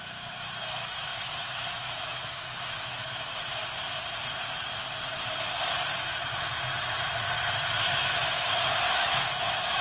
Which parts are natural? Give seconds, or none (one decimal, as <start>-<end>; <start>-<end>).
3.6-8.2